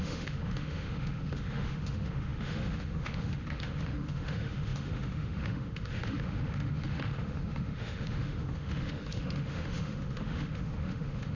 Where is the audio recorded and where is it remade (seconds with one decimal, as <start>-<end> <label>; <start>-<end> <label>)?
0.0-11.3 remade